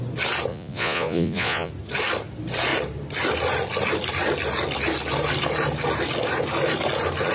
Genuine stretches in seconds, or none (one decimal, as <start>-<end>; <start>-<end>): 0.0-0.5; 1.7-7.3